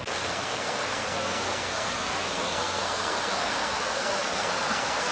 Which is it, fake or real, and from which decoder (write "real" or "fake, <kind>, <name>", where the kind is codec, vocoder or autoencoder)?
fake, codec, SNAC